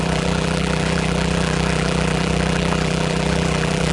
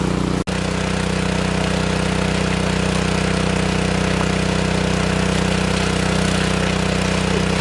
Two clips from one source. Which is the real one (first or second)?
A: second